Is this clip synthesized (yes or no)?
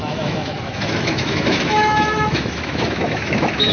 yes